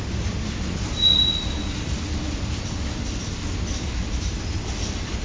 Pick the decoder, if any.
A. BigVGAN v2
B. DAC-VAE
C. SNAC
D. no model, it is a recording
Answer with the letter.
D